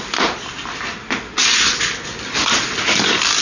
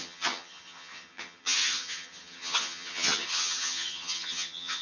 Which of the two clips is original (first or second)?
first